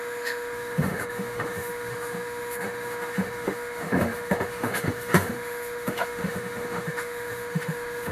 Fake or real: fake